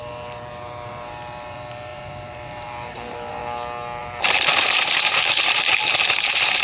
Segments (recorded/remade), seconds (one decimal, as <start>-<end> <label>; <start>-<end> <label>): 0.0-3.4 remade; 3.4-4.0 recorded; 4.0-6.6 remade